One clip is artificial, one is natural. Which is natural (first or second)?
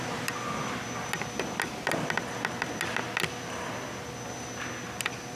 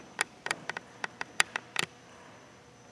first